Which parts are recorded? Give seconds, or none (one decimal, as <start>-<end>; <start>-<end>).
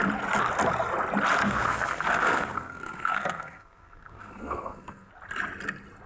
0.0-1.4; 5.1-6.1